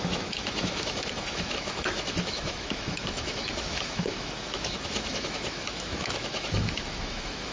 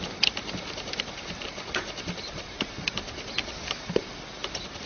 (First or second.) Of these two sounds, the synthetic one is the first